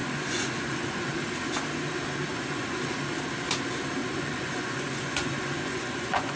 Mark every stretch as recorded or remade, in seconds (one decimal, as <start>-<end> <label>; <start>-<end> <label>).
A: 0.0-1.1 remade; 1.1-2.3 recorded; 2.3-3.0 remade; 3.0-4.0 recorded; 4.0-6.4 remade